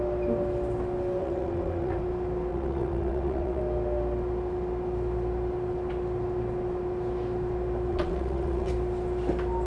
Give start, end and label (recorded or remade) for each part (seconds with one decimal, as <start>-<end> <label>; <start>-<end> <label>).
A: 0.0-1.2 recorded; 1.2-2.0 remade; 2.0-2.5 recorded; 2.5-3.6 remade; 3.6-7.9 recorded; 7.9-8.7 remade; 8.7-9.7 recorded